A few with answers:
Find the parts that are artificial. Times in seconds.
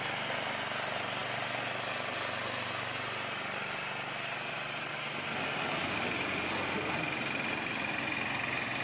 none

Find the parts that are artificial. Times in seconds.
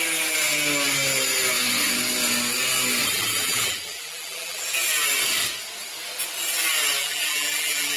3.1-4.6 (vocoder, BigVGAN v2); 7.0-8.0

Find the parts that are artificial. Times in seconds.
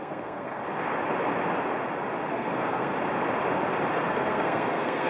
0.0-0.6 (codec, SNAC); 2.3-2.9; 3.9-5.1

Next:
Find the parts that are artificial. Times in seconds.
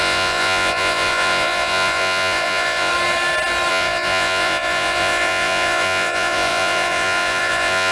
0.0-2.9 (vocoder, Vocos); 3.7-7.9